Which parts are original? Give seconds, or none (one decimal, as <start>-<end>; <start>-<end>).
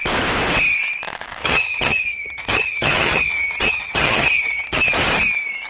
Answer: 0.0-1.4; 4.8-5.7